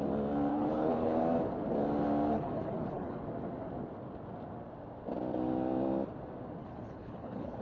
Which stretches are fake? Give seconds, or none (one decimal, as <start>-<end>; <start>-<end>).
0.5-1.2; 2.3-3.2; 6.6-7.6